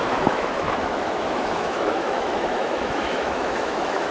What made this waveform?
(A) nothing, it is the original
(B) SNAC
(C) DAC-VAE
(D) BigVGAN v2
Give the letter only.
C